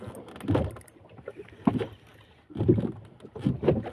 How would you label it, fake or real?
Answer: real